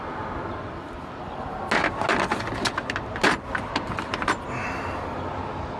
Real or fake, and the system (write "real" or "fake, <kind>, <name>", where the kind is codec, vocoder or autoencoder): real